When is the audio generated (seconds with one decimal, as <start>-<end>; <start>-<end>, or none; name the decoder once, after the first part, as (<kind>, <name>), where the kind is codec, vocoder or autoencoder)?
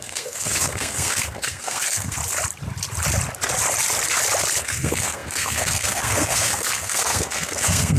0.0-2.2 (codec, SNAC); 4.6-8.0